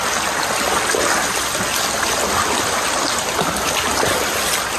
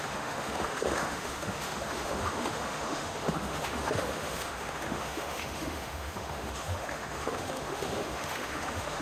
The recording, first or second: first